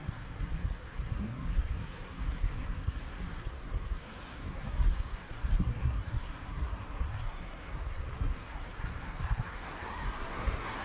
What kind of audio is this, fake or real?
fake